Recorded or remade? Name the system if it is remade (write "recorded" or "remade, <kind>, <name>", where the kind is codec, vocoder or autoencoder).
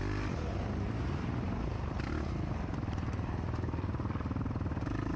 remade, vocoder, BigVGAN v2